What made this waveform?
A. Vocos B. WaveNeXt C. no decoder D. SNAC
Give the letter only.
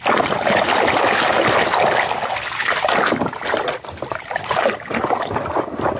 C